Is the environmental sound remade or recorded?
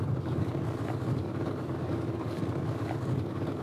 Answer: remade